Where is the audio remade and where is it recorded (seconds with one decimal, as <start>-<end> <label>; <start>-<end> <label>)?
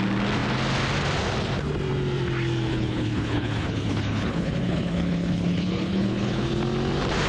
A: 0.0-2.7 recorded; 2.7-6.5 remade; 6.5-7.3 recorded